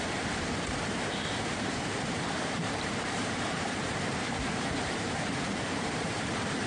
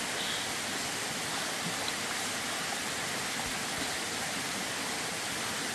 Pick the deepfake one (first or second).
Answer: first